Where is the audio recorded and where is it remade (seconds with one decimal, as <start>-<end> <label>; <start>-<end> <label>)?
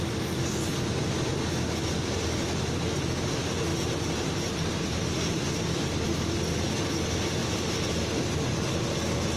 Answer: 0.0-3.7 recorded; 3.7-5.2 remade; 5.2-7.4 recorded; 7.4-8.3 remade; 8.3-9.4 recorded